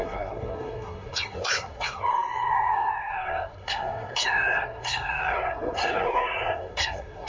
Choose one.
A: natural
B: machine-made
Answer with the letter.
B